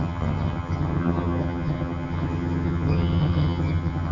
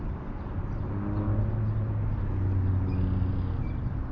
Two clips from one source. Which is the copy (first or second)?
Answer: first